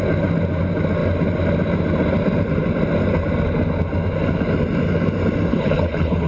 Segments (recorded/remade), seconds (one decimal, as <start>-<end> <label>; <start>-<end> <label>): 0.0-5.5 recorded; 5.5-6.3 remade